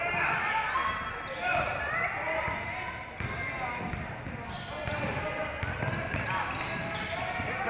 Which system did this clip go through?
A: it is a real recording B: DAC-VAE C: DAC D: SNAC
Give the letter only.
A